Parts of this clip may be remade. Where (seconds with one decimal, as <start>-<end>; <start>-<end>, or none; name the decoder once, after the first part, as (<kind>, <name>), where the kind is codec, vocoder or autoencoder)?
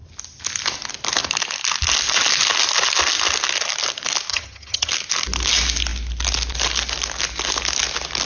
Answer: 4.3-4.9 (vocoder, HiFi-GAN)